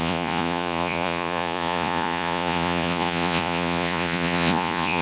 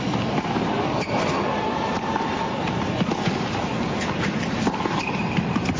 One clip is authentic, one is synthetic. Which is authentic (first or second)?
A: second